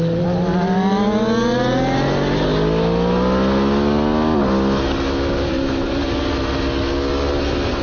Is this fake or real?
real